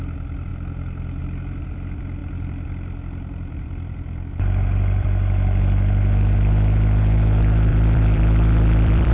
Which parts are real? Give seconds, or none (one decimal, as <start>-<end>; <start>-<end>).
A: 0.0-2.2; 4.3-7.7